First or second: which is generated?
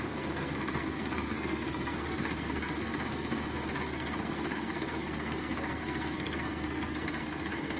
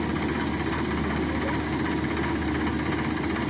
first